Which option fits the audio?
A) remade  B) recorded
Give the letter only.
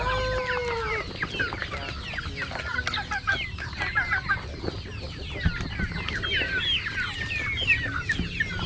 B